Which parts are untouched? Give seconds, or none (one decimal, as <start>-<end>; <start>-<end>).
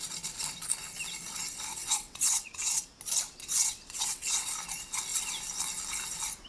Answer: 0.0-1.8; 2.8-3.4; 4.5-6.5